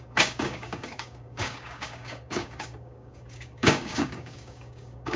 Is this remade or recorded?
remade